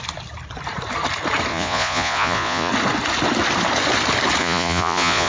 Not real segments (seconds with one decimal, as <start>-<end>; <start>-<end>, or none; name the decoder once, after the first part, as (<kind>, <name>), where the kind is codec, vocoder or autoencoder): 1.5-2.7 (vocoder, Vocos); 4.4-5.3